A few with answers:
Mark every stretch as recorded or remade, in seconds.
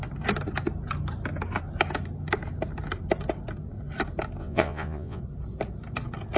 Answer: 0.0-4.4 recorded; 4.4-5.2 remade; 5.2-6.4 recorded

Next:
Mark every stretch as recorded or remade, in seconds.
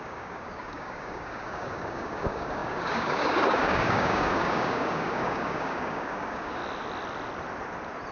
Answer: 0.0-6.6 remade; 6.6-8.1 recorded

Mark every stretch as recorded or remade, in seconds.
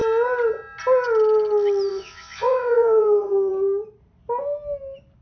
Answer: 0.0-1.9 recorded; 1.9-3.5 remade; 3.5-5.2 recorded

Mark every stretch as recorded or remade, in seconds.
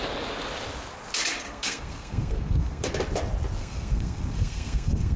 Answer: 0.0-1.5 recorded; 1.5-2.9 remade; 2.9-3.6 recorded; 3.6-5.2 remade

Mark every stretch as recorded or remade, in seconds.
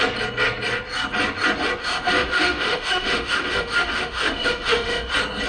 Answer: 0.0-1.8 recorded; 1.8-5.1 remade; 5.1-5.5 recorded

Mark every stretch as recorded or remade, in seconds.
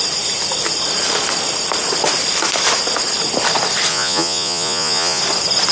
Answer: 0.0-3.9 recorded; 3.9-5.2 remade; 5.2-5.7 recorded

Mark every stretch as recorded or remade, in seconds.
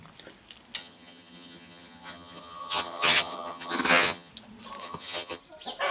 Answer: 0.0-0.8 recorded; 0.8-4.3 remade; 4.3-4.8 recorded; 4.8-5.4 remade; 5.4-5.9 recorded